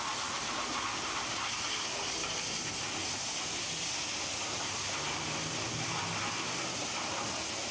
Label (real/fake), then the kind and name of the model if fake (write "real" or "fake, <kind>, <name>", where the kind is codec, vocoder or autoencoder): real